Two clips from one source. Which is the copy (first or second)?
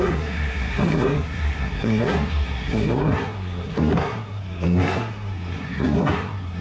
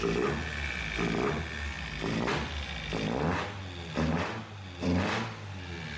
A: first